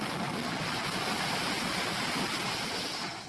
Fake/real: real